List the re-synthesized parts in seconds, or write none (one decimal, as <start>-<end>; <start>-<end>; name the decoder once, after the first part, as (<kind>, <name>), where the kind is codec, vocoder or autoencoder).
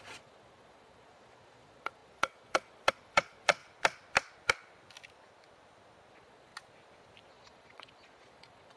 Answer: 0.0-3.6 (vocoder, Vocos); 6.1-6.5; 7.3-8.8